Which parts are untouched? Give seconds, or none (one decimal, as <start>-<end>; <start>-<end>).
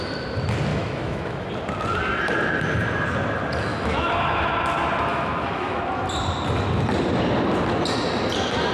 0.0-0.7; 1.5-3.7; 4.5-5.1; 5.8-8.7